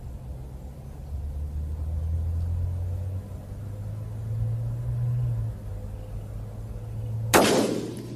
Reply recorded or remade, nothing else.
recorded